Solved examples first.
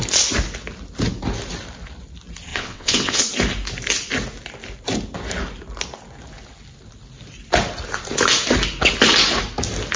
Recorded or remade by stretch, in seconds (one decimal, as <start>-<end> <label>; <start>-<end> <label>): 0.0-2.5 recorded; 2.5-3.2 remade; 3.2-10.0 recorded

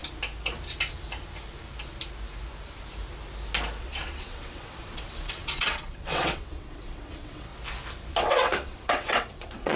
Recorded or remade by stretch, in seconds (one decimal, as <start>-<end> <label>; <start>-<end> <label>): 0.0-3.8 recorded; 3.8-7.5 remade; 7.5-8.1 recorded; 8.1-9.8 remade

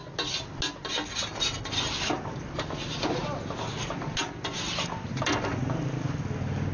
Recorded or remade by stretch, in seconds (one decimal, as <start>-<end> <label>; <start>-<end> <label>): 0.0-6.7 recorded

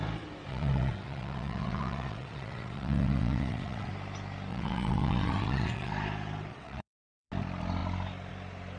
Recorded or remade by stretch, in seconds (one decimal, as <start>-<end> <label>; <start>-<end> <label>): 0.0-0.5 recorded; 0.5-3.9 remade; 3.9-4.5 recorded; 4.5-5.9 remade; 5.9-6.5 recorded; 6.5-7.3 remade; 7.3-8.8 recorded

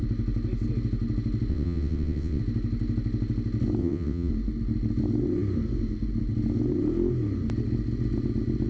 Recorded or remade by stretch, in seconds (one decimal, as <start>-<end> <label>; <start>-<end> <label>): 0.0-1.5 recorded; 1.5-2.4 remade; 2.4-3.8 recorded; 3.8-4.3 remade; 4.3-8.7 recorded

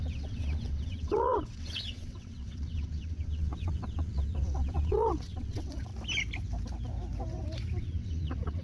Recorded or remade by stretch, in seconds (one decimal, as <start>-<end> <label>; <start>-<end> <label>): 0.0-5.9 remade; 5.9-7.8 recorded; 7.8-8.6 remade

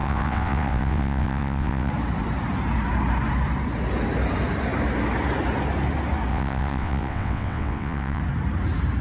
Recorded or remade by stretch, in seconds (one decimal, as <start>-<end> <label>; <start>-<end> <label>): 0.0-1.9 remade; 1.9-6.3 recorded; 6.3-8.2 remade; 8.2-9.0 recorded